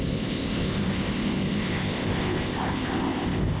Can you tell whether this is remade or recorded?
remade